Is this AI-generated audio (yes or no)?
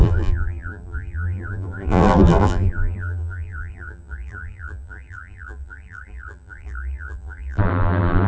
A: yes